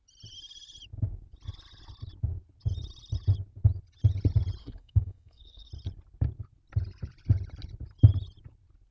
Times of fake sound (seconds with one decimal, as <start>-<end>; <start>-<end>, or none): 4.6-5.7